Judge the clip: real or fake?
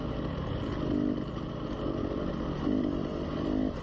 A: real